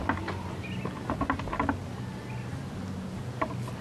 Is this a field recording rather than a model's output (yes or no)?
yes